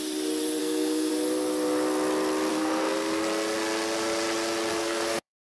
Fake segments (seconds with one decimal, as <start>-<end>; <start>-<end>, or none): 0.6-1.1; 2.5-3.2; 4.7-5.5